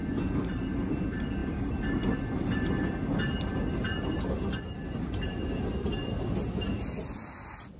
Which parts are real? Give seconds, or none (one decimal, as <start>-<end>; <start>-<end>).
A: 0.0-7.8